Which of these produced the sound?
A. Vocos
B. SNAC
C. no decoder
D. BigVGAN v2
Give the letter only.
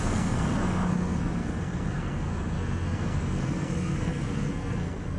B